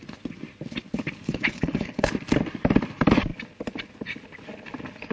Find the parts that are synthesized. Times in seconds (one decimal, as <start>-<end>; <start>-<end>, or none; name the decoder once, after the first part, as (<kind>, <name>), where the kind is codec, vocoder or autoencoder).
1.2-2.1 (codec, HILCodec)